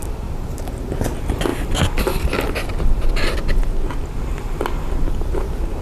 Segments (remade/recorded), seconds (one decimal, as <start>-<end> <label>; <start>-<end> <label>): 0.0-5.8 recorded